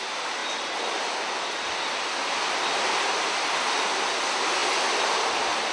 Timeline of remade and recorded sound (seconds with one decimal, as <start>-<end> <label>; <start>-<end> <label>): 0.0-0.4 remade; 0.4-3.8 recorded; 3.8-4.6 remade; 4.6-5.7 recorded